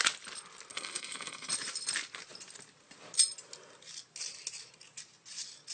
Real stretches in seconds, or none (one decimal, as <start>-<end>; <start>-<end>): 0.0-0.7; 1.5-5.7